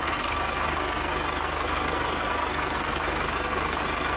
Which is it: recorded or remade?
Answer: remade